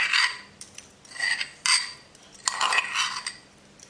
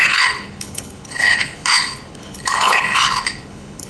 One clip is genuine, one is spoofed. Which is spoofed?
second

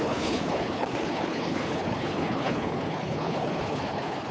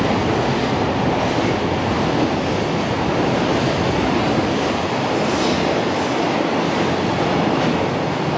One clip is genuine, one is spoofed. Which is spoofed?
first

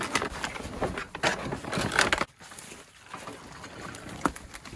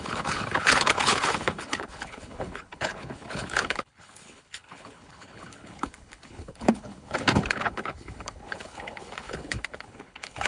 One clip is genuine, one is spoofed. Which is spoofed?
second